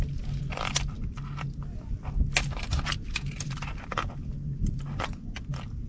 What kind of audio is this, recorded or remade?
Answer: recorded